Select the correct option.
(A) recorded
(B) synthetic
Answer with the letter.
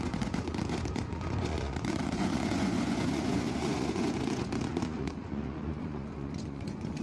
B